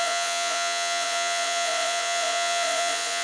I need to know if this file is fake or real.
fake